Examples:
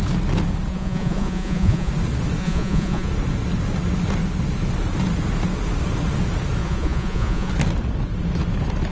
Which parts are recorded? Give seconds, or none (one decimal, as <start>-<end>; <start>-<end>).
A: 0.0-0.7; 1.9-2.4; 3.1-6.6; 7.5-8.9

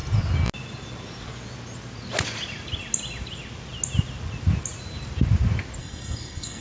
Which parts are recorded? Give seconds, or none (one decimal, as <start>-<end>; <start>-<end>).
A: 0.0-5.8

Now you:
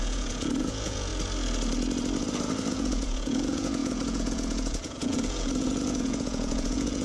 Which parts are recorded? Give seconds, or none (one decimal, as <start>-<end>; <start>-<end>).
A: 1.1-2.7

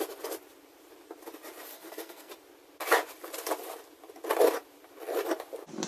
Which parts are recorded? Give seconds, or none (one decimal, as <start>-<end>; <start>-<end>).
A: 0.0-1.7; 2.3-5.9